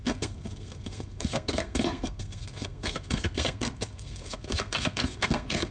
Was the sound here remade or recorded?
remade